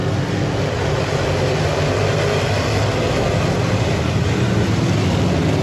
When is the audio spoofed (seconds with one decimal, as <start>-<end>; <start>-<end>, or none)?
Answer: none